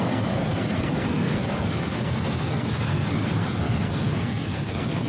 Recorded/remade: remade